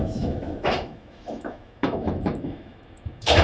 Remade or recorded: remade